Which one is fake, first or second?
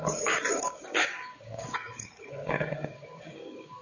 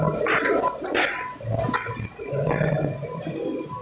first